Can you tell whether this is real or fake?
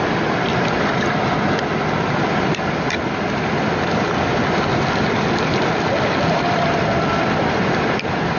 real